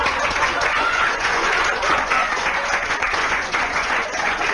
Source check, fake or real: fake